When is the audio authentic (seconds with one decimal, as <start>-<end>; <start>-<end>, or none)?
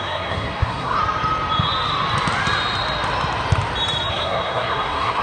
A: 1.0-4.1